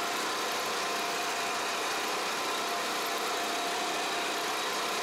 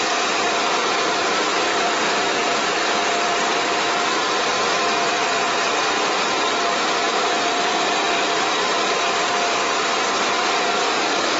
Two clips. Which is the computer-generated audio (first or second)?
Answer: second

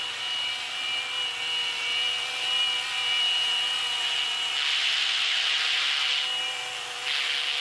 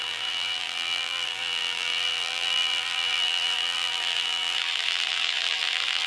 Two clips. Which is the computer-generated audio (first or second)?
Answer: second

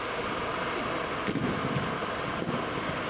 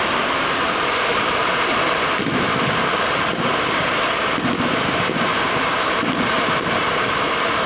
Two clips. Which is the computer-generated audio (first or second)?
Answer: second